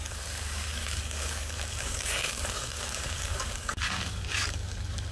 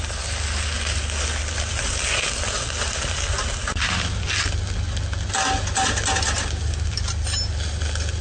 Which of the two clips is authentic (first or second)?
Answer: second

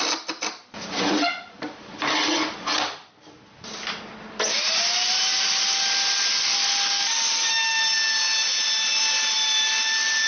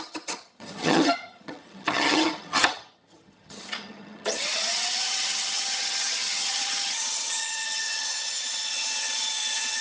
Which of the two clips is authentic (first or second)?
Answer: first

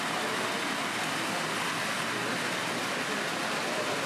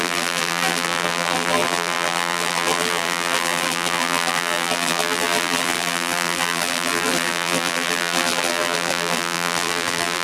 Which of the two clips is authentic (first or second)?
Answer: first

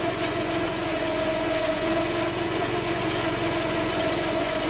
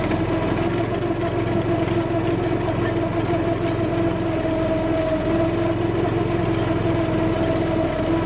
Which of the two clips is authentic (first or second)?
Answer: second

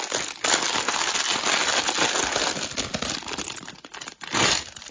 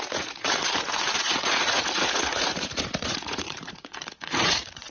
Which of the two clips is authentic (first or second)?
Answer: first